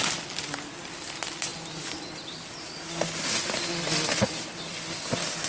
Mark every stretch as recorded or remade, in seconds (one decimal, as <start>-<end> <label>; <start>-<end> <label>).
0.0-5.5 recorded